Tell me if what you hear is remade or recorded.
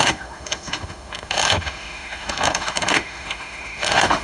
remade